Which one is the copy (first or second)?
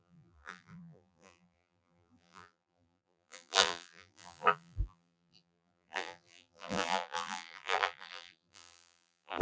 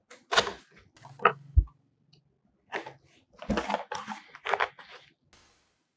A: first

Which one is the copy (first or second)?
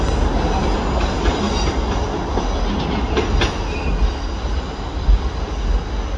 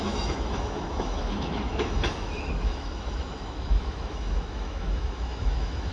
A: second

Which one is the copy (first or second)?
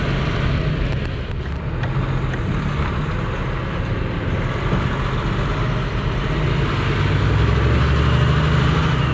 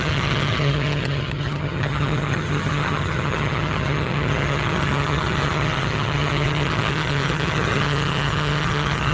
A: second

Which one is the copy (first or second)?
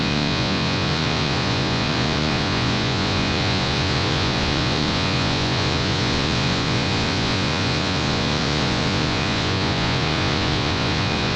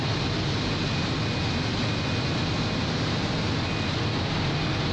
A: first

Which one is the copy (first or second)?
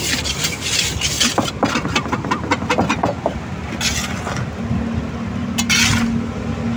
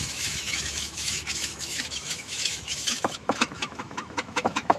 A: second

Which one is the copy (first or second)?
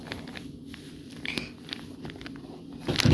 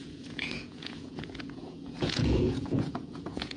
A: second